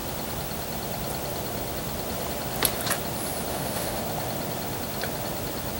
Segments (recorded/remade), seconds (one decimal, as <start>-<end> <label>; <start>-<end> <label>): 0.0-3.5 recorded; 3.5-4.0 remade; 4.0-5.8 recorded